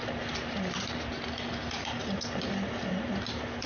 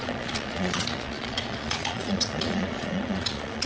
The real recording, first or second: first